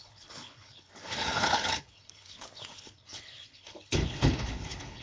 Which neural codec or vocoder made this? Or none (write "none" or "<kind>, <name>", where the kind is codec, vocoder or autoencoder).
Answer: codec, HILCodec